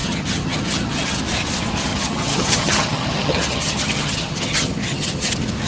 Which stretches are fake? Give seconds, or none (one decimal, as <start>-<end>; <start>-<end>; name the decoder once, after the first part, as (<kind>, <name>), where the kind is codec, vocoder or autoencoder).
0.0-1.2 (vocoder, HiFi-GAN); 1.9-5.3